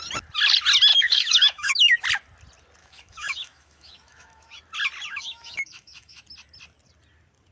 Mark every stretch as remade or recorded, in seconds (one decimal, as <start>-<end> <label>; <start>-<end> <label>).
0.0-0.9 recorded; 0.9-2.0 remade; 2.0-2.8 recorded; 2.8-4.6 remade; 4.6-5.1 recorded; 5.1-6.2 remade; 6.2-7.5 recorded